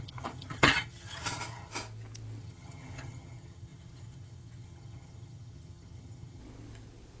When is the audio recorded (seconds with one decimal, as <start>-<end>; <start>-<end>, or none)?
1.7-2.4; 6.4-7.2